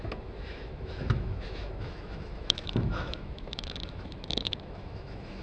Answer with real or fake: fake